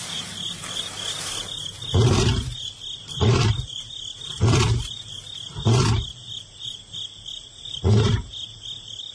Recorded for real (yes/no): yes